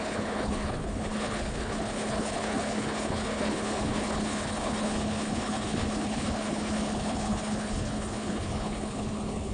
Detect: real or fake fake